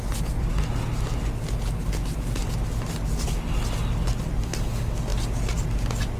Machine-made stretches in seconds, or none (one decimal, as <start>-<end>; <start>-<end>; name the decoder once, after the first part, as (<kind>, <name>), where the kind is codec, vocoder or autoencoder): 0.0-0.5 (vocoder, BigVGAN v2); 3.9-5.1

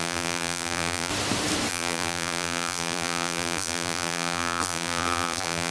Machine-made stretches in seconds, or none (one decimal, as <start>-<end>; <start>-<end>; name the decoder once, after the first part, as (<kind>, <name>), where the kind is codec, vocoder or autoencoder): 0.0-1.1 (vocoder, BigVGAN v2); 1.7-5.7

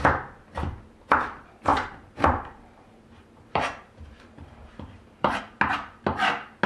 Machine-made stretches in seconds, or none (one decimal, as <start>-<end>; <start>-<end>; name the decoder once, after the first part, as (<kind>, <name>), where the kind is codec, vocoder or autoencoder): 1.7-5.4 (vocoder, BigVGAN v2)

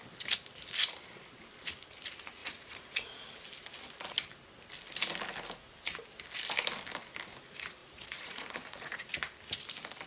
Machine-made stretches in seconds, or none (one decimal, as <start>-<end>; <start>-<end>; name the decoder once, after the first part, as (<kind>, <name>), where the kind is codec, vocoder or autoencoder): 2.4-3.2 (vocoder, Vocos); 7.8-9.1

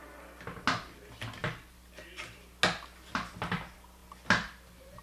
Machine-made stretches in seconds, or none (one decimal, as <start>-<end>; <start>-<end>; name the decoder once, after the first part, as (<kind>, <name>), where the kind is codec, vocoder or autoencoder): none

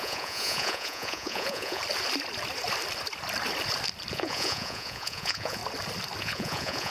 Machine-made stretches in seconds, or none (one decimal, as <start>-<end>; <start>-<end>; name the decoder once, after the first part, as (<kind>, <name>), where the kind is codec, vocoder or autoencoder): 0.0-1.8 (vocoder, Vocos); 4.1-5.6; 6.2-6.9